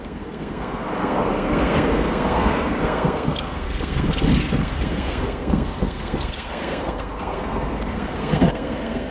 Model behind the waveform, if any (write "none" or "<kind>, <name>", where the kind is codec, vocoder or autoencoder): codec, SNAC